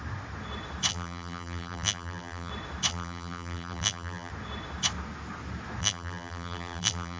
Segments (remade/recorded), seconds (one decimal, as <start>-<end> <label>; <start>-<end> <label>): 0.0-0.9 recorded; 0.9-2.5 remade; 2.5-2.9 recorded; 2.9-4.3 remade; 4.3-5.8 recorded; 5.8-7.2 remade

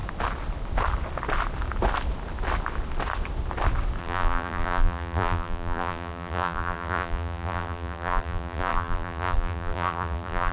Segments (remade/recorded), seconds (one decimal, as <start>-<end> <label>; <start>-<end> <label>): 0.0-4.0 recorded; 4.0-10.5 remade

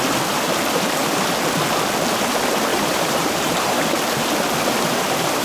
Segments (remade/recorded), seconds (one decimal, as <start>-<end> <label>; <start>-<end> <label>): 0.0-2.7 recorded; 2.7-3.7 remade; 3.7-5.4 recorded

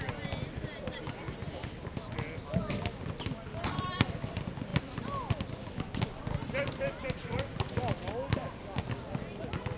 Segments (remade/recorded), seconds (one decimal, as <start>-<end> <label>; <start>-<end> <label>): 0.0-9.8 recorded

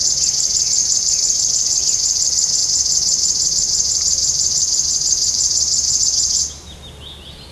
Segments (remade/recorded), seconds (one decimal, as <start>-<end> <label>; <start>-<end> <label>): 0.0-0.8 recorded; 0.8-1.4 remade; 1.4-2.6 recorded; 2.6-6.0 remade; 6.0-7.5 recorded